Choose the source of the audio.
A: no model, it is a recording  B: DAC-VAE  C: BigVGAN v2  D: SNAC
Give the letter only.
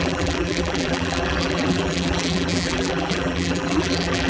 C